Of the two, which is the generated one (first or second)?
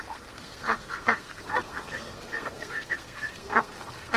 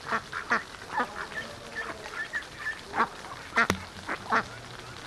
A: first